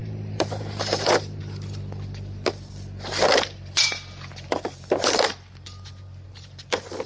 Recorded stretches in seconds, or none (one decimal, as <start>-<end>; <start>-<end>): 1.4-7.1